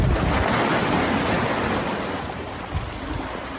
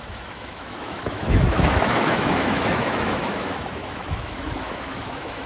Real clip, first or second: first